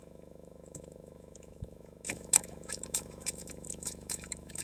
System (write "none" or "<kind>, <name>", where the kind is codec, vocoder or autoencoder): autoencoder, DAC-VAE